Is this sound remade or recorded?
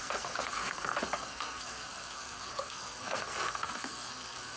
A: remade